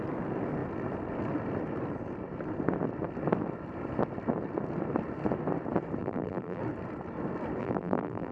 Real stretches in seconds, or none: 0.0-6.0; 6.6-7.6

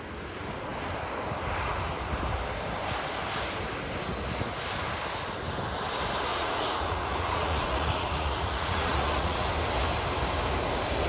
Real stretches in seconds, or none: 0.0-6.3; 9.5-11.1

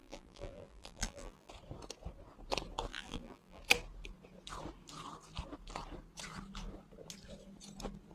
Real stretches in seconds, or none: 1.5-2.9; 3.6-8.1

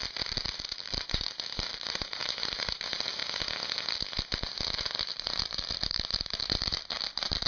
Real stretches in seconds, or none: 3.2-4.9

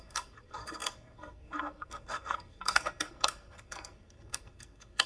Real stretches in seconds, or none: none

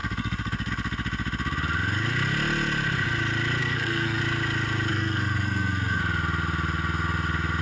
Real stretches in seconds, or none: 0.7-3.6; 4.2-4.9; 6.0-7.6

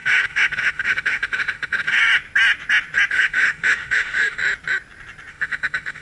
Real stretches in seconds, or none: 2.0-3.1; 4.4-5.3